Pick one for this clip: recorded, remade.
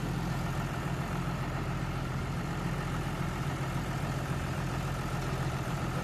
remade